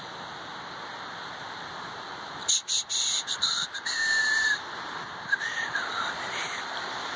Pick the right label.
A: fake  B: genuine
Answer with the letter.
B